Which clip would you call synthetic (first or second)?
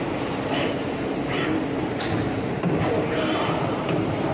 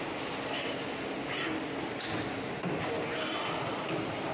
first